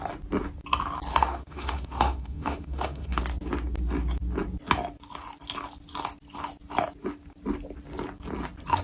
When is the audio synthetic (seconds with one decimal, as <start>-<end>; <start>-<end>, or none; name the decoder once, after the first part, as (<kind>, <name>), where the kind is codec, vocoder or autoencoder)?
1.1-3.2 (autoencoder, DAC-VAE)